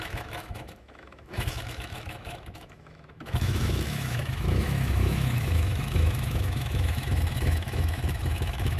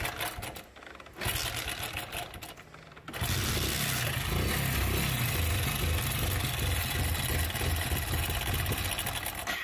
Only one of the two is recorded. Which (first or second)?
second